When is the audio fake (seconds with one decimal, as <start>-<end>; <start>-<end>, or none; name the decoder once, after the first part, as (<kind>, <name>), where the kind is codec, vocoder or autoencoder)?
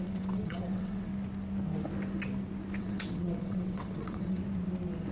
0.0-1.1 (vocoder, WaveNeXt); 2.8-4.4